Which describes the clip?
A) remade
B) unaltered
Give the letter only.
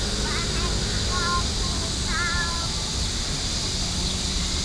B